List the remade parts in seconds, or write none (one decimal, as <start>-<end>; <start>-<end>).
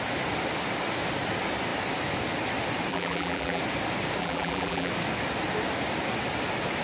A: 2.9-3.6; 4.2-4.9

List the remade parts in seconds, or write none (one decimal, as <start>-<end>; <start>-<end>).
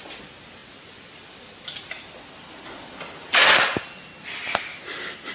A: none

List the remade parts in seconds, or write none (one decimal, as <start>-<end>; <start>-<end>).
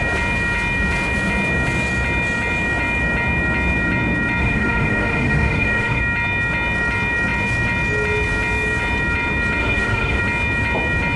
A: 4.4-6.0; 9.6-10.2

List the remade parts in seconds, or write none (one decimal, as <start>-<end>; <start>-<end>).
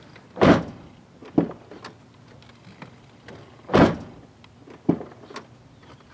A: none